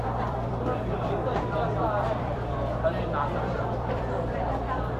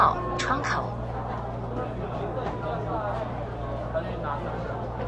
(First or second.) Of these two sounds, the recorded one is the second